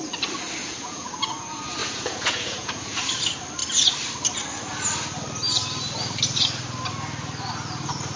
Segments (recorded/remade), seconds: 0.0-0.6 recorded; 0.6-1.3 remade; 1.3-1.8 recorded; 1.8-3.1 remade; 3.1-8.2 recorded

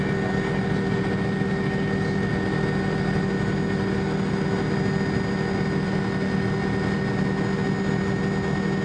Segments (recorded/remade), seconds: 0.0-8.8 recorded